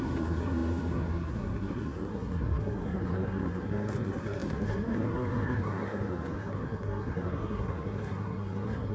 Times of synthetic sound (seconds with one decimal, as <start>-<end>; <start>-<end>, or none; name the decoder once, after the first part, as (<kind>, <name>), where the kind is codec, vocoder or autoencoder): 0.0-8.9 (codec, SNAC)